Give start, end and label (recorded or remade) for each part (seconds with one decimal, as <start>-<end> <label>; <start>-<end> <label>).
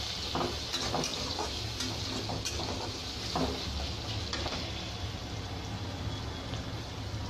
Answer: 0.0-7.3 recorded